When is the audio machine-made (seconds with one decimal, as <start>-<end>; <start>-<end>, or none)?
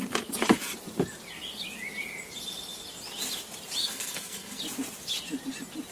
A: 3.8-4.6